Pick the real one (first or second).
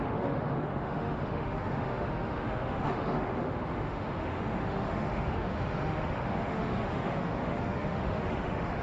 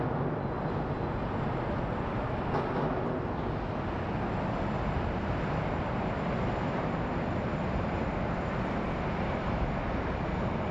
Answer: second